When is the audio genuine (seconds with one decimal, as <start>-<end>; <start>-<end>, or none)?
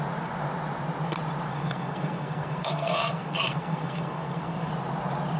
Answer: 0.0-1.5; 4.7-5.4